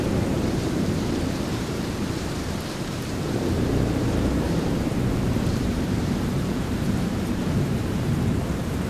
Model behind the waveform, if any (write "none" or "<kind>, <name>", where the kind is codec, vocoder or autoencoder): vocoder, BigVGAN v2